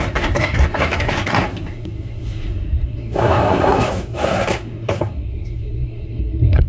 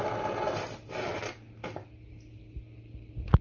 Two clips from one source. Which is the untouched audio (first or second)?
second